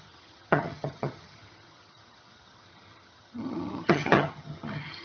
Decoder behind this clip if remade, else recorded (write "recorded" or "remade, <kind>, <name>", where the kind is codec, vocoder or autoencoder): remade, vocoder, HiFi-GAN